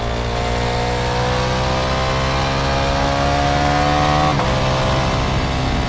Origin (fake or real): real